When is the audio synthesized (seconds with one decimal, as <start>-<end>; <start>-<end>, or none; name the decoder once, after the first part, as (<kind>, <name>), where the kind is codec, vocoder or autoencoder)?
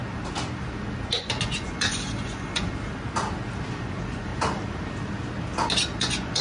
1.2-2.7 (vocoder, Vocos); 3.7-4.3; 6.0-6.4